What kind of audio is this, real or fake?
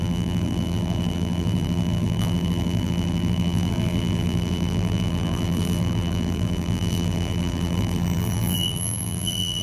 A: fake